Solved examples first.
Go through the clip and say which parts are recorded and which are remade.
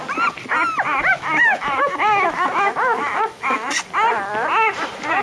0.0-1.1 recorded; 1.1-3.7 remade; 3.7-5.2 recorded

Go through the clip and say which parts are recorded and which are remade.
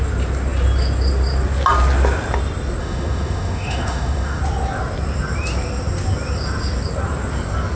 0.0-2.8 recorded; 2.8-4.4 remade; 4.4-7.8 recorded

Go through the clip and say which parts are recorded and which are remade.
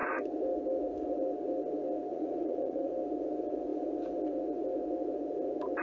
0.0-2.1 recorded; 2.1-2.9 remade; 2.9-5.8 recorded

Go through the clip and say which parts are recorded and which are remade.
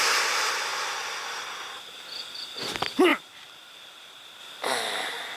0.0-3.1 recorded; 3.1-4.4 remade; 4.4-5.4 recorded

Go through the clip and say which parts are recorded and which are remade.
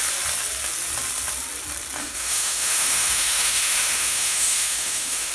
0.0-2.0 recorded; 2.0-5.3 remade